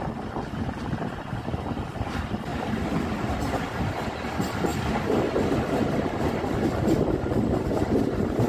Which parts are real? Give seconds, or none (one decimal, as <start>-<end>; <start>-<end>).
0.0-8.5